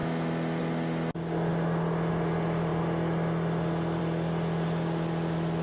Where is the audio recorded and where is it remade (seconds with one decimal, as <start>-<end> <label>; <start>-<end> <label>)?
0.0-5.6 recorded